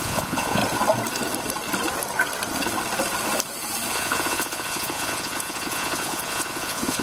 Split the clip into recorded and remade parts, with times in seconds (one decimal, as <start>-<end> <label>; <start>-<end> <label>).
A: 0.0-0.6 remade; 0.6-3.9 recorded; 3.9-7.0 remade